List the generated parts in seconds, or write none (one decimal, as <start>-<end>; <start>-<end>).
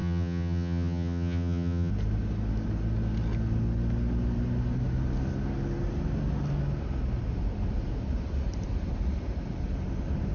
0.0-1.9